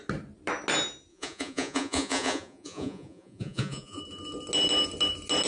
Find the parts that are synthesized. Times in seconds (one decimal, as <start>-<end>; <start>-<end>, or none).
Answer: 1.1-4.0